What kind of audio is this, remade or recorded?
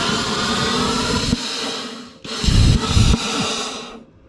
recorded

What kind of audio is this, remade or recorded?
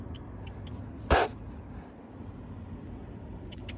recorded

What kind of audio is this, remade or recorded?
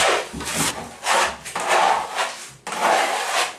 recorded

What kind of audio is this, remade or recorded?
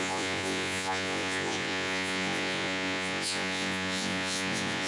remade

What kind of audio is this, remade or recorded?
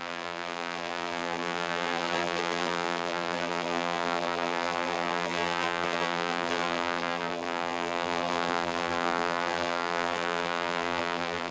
remade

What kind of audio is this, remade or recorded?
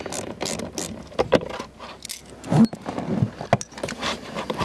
recorded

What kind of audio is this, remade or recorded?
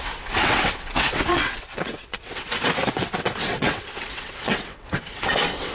remade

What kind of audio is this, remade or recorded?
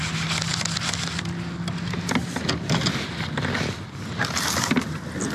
recorded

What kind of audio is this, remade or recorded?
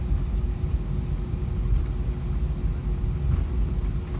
recorded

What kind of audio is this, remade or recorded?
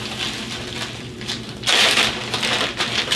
recorded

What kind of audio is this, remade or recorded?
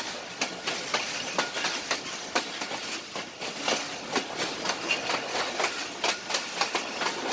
recorded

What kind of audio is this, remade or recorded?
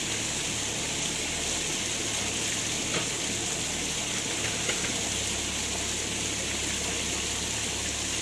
recorded